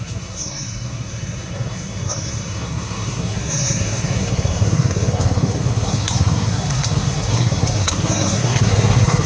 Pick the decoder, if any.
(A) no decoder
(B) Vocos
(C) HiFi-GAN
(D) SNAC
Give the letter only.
D